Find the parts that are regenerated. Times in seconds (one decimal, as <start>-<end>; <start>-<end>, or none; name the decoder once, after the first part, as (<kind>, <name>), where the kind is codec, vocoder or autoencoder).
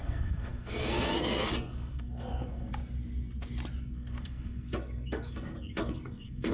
0.0-2.7 (codec, SNAC); 3.8-6.5